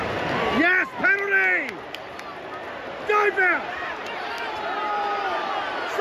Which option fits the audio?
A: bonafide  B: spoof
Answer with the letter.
A